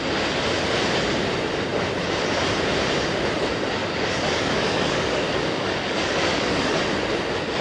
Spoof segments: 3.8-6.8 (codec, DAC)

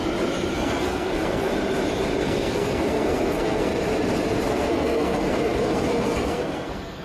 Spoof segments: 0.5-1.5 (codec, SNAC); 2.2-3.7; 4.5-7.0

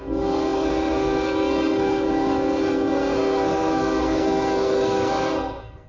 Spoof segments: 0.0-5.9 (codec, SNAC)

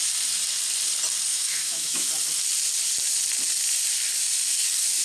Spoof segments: 1.3-2.1 (autoencoder, DAC-VAE)

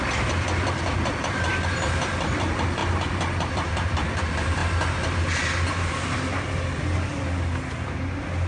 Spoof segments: 0.0-4.6 (vocoder, BigVGAN v2)

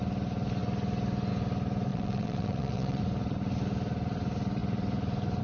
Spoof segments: 1.9-3.0 (vocoder, WaveNeXt)